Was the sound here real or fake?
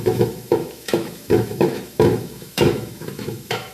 fake